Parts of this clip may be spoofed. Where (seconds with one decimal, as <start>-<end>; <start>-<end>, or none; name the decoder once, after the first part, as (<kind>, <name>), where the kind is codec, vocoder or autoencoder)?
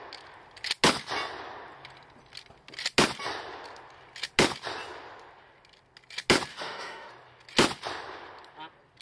6.5-7.1 (autoencoder, DAC-VAE)